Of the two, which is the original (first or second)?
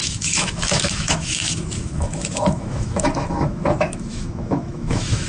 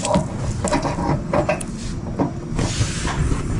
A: second